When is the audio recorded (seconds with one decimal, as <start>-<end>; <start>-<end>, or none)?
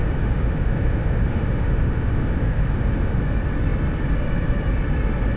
3.2-5.4